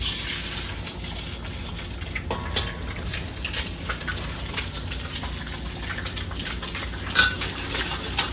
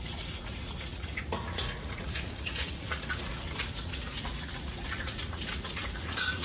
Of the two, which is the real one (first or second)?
first